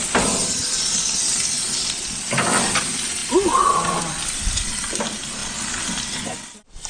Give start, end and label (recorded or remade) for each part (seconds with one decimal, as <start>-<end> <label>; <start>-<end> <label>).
0.0-0.6 remade; 0.6-1.7 recorded; 1.7-5.4 remade; 5.4-6.0 recorded; 6.0-6.9 remade